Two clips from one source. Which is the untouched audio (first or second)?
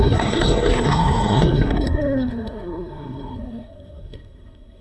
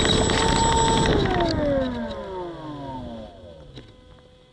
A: second